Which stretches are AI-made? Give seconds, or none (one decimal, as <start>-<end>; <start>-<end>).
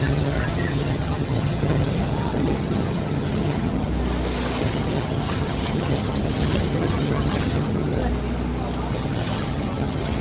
0.0-3.9; 4.6-8.0; 8.9-10.2